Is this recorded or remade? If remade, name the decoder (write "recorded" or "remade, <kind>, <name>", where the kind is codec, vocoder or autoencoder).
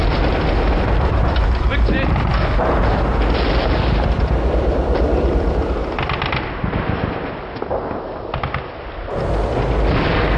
recorded